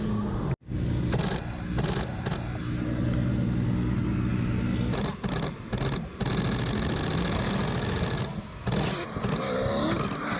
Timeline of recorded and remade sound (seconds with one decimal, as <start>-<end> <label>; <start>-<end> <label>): 0.0-10.4 recorded